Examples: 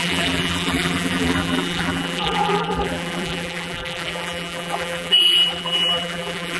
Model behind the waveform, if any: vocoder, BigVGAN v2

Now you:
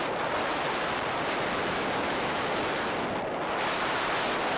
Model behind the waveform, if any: none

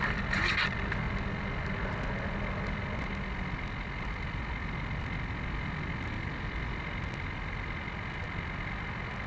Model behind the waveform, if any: none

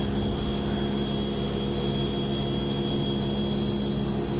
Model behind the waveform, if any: none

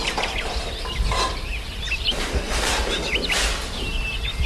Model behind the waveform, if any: none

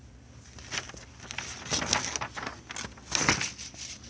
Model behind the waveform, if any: none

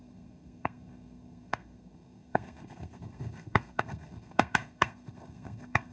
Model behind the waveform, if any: codec, SNAC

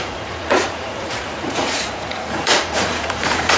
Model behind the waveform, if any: vocoder, Vocos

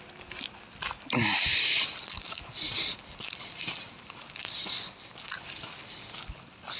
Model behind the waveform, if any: none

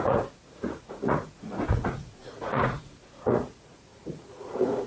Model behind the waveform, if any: vocoder, Vocos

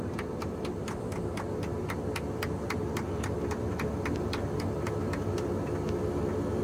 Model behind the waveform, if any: none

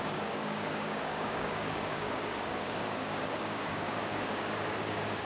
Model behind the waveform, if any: codec, DAC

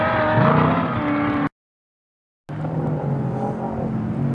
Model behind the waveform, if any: none